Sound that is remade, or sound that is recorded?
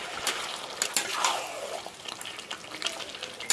recorded